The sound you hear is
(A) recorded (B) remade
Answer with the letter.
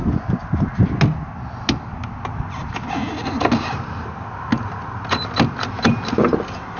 A